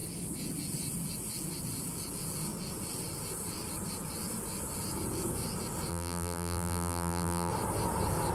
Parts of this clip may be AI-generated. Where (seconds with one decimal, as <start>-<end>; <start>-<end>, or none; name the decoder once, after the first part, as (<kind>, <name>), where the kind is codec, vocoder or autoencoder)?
5.9-7.5 (vocoder, BigVGAN v2)